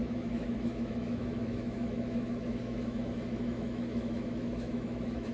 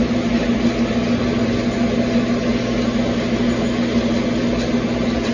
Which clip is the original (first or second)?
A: second